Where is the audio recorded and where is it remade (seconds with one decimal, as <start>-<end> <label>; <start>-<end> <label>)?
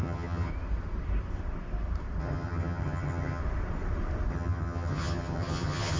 0.0-0.5 remade; 0.5-2.2 recorded; 2.2-3.4 remade; 3.4-4.3 recorded; 4.3-6.0 remade